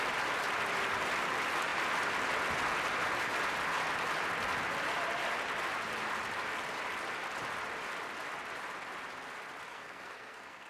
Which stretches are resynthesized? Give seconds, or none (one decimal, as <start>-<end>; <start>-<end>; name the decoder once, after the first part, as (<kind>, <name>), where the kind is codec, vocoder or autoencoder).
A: 9.7-10.7 (codec, SNAC)